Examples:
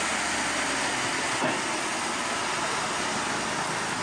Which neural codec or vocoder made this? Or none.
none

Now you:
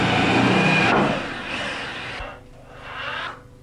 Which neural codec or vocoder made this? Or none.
none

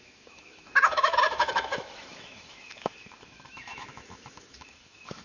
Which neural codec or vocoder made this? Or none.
autoencoder, DAC-VAE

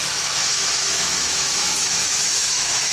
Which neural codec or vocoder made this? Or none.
autoencoder, DAC-VAE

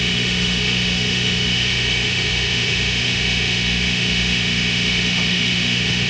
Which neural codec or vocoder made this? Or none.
autoencoder, DAC-VAE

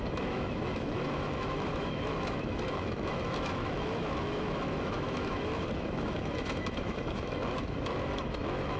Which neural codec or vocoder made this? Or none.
autoencoder, DAC-VAE